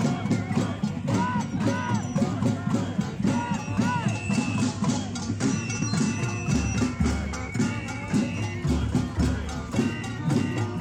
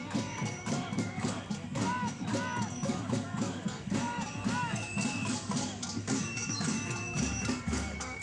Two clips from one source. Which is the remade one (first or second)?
second